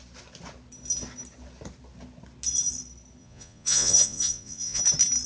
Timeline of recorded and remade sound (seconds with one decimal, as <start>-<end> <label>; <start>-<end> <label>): 0.0-3.2 recorded; 3.2-4.8 remade; 4.8-5.3 recorded